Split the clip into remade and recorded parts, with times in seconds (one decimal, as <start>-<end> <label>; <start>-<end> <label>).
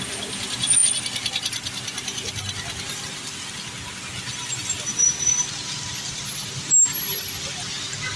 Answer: 0.0-8.2 recorded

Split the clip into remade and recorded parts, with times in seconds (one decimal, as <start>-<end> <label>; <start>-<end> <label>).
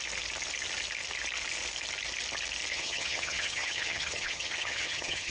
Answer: 0.0-2.7 recorded; 2.7-5.3 remade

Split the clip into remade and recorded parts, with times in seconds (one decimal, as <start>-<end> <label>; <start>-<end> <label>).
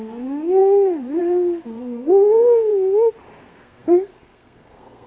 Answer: 0.0-2.7 remade; 2.7-3.4 recorded; 3.4-5.1 remade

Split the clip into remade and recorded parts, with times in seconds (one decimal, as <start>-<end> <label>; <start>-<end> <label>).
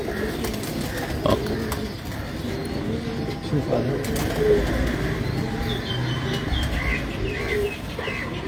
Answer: 0.0-8.5 recorded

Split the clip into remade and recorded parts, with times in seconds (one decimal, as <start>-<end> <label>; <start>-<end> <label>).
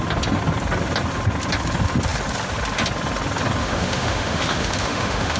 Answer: 0.0-3.6 recorded; 3.6-5.4 remade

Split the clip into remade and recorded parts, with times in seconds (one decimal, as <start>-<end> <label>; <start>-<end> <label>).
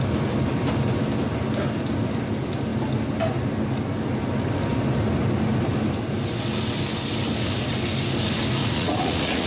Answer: 0.0-8.6 recorded; 8.6-9.5 remade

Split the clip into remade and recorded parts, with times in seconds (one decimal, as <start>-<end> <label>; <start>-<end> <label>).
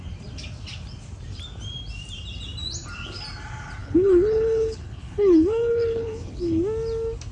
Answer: 0.0-3.8 recorded; 3.8-6.6 remade; 6.6-7.3 recorded